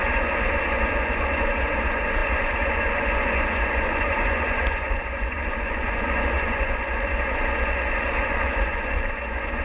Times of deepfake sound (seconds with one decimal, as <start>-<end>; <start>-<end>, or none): 0.0-9.6